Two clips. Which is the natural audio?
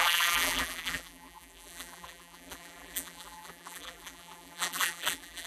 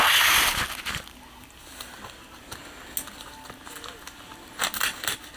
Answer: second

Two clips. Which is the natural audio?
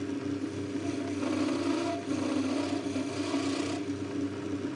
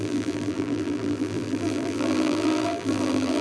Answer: first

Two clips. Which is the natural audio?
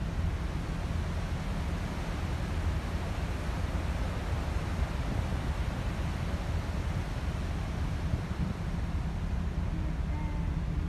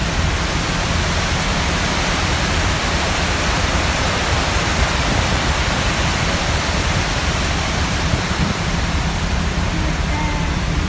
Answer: first